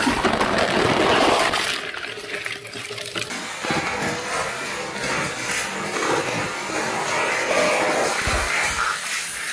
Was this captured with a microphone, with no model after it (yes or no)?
yes